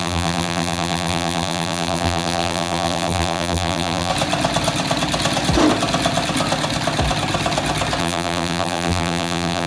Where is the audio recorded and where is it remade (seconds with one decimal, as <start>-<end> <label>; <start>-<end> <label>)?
0.0-4.1 remade; 4.1-8.0 recorded; 8.0-9.7 remade